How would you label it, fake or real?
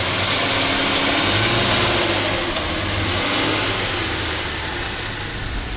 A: real